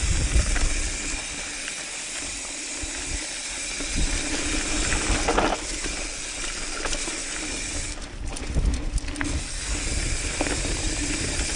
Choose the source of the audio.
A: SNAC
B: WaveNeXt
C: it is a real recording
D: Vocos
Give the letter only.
C